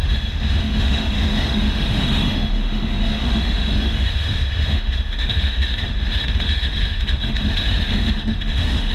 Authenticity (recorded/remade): remade